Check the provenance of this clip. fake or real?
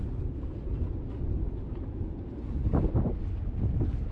real